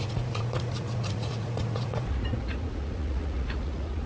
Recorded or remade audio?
remade